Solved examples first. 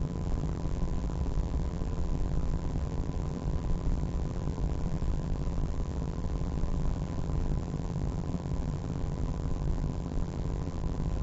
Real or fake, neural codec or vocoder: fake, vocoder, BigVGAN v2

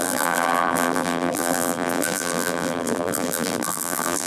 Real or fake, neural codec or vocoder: fake, vocoder, BigVGAN v2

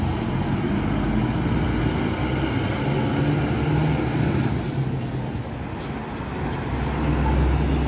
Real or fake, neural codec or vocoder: real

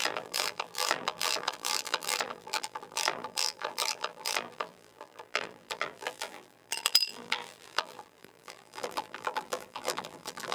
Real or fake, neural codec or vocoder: fake, vocoder, BigVGAN v2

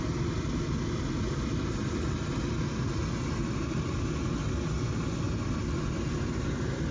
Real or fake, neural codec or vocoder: real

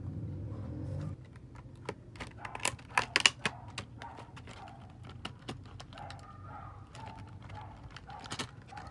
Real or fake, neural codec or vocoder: real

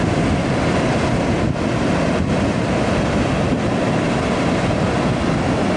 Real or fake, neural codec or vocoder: real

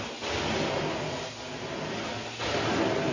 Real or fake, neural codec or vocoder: real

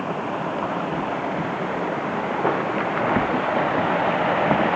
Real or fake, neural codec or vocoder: real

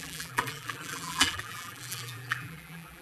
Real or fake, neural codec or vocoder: fake, vocoder, BigVGAN v2